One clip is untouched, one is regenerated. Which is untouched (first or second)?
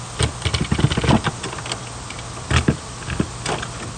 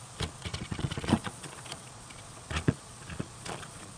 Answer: first